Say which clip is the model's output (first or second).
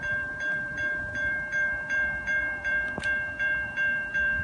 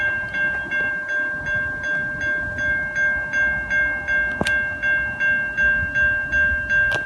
first